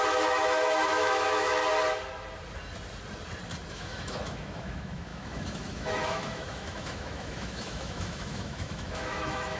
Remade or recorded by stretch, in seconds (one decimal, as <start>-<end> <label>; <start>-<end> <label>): 0.0-1.6 remade; 1.6-3.7 recorded; 3.7-9.6 remade